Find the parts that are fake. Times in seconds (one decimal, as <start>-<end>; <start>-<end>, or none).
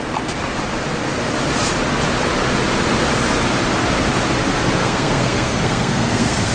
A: 4.8-6.5